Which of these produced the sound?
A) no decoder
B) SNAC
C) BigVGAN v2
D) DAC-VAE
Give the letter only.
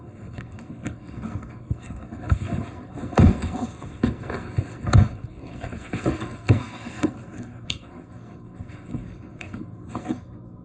B